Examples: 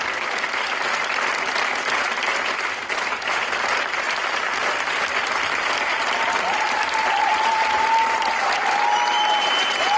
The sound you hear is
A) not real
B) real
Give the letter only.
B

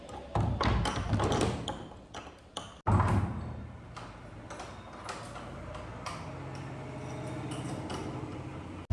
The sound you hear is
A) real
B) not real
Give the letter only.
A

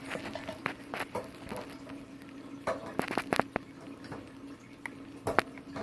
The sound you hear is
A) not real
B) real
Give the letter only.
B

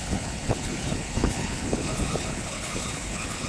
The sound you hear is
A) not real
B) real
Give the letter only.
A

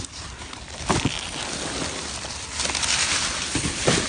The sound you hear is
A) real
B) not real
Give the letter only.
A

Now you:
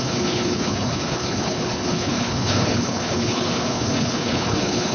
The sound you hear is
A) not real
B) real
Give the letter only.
A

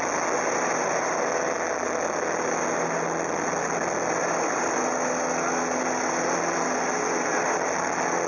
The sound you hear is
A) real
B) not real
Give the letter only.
A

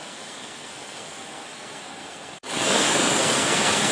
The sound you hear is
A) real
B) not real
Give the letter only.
B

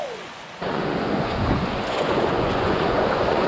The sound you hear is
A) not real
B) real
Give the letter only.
A